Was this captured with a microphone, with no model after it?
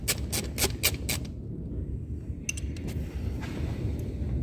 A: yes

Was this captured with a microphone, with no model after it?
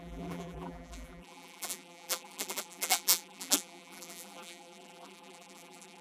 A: no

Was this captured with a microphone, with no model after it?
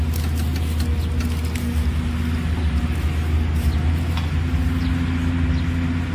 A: yes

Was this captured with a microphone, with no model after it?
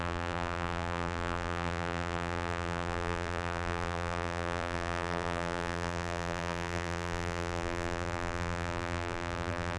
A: no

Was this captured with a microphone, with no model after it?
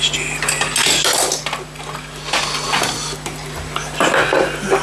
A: yes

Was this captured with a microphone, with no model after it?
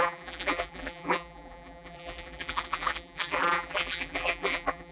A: no